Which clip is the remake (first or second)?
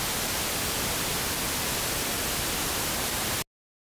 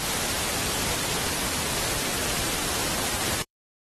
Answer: second